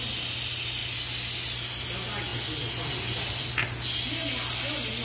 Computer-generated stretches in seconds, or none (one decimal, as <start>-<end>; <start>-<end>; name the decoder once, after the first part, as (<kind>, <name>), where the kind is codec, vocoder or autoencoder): none